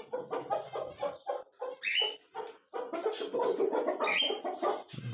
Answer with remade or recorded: recorded